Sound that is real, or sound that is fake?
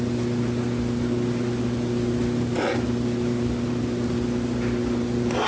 real